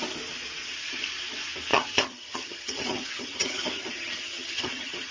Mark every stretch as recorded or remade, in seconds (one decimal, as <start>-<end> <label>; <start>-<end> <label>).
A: 0.0-1.7 recorded; 1.7-5.1 remade